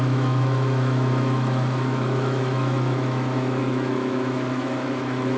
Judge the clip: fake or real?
fake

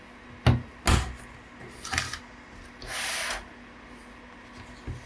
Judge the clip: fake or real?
real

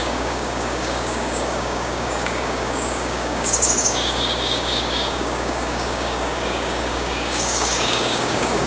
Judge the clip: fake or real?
fake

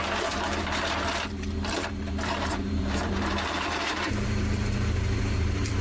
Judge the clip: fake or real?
fake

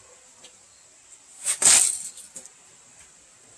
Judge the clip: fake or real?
real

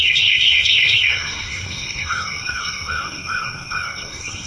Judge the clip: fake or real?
fake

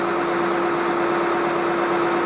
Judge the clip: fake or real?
real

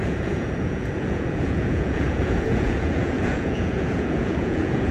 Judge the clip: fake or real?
fake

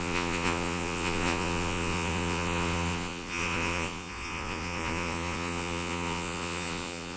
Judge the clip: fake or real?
fake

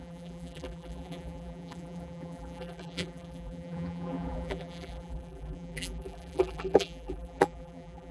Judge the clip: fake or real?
fake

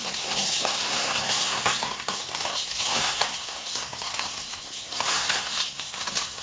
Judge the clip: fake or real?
fake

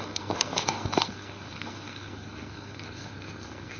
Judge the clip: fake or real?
fake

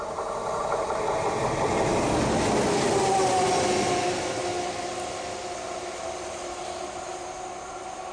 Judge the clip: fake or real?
real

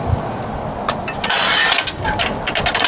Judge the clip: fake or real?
real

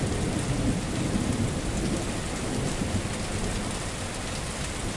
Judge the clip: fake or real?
real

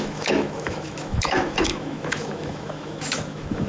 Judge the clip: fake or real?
fake